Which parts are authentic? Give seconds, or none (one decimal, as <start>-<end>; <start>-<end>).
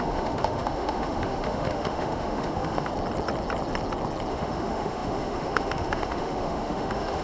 2.9-4.3